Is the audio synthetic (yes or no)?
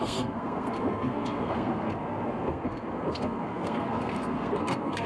yes